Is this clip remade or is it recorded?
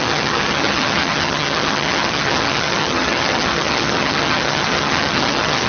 remade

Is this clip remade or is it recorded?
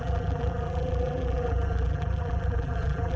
remade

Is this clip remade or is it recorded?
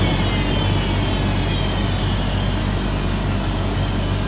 recorded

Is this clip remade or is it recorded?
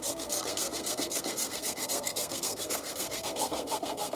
remade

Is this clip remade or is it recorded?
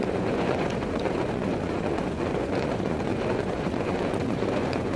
remade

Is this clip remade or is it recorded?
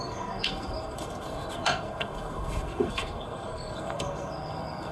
remade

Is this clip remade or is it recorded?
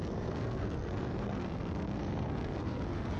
remade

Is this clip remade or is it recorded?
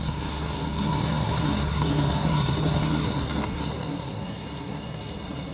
remade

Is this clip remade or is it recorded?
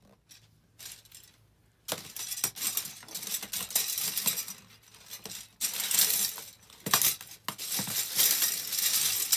recorded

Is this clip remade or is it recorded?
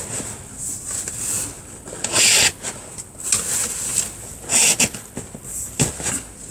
recorded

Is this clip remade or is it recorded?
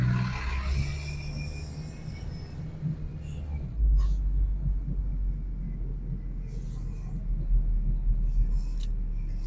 recorded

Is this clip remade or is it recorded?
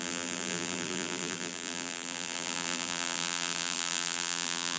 remade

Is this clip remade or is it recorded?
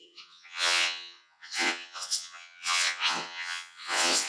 remade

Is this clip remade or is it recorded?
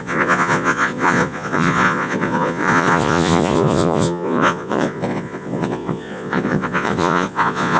remade